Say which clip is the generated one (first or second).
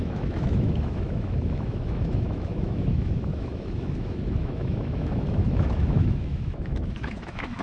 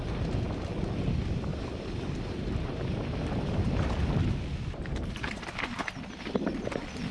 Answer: first